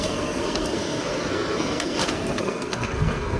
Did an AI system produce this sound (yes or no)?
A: yes